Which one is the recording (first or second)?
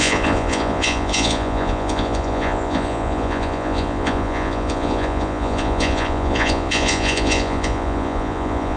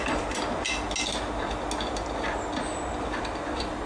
second